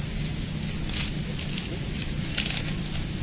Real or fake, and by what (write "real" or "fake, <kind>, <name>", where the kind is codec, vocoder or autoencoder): real